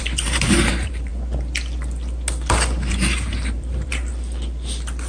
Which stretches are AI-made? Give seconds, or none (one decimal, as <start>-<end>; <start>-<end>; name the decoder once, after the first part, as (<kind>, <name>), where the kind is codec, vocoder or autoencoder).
0.0-1.1 (vocoder, BigVGAN v2); 2.9-4.1